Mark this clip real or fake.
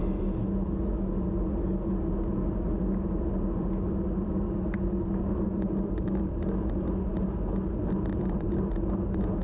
real